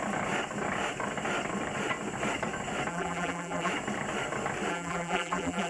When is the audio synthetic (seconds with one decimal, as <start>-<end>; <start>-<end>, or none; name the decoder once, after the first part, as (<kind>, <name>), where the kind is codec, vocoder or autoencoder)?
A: 2.9-3.7 (vocoder, BigVGAN v2); 4.7-5.7